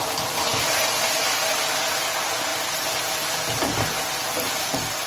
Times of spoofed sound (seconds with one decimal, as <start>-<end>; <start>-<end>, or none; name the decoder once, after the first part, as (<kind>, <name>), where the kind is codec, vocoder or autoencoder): none